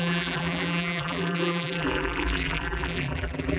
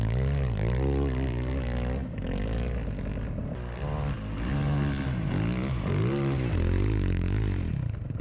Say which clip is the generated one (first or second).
first